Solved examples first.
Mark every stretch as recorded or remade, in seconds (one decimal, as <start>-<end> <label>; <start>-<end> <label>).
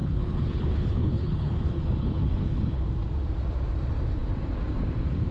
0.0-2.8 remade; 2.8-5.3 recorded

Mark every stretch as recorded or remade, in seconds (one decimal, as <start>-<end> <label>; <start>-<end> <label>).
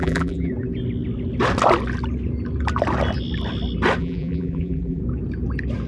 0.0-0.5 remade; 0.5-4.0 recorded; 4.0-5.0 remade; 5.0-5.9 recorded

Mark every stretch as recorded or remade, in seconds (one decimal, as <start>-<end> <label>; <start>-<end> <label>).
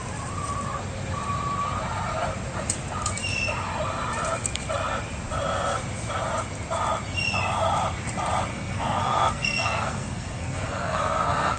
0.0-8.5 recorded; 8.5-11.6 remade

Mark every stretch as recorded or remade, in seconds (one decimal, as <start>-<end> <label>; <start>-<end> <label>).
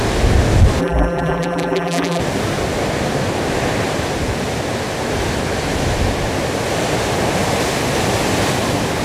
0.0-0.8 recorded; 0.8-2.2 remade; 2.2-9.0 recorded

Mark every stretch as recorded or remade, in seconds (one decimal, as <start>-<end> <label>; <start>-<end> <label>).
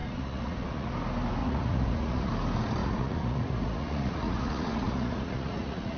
0.0-0.9 remade; 0.9-1.4 recorded; 1.4-2.3 remade; 2.3-2.8 recorded; 2.8-6.0 remade